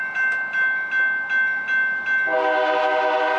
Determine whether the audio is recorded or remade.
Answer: recorded